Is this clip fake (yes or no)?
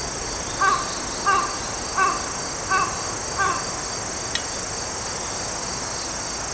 no